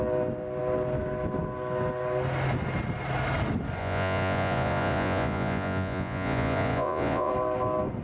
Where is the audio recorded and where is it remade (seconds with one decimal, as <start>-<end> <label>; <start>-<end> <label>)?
0.0-3.8 recorded; 3.8-7.3 remade; 7.3-8.0 recorded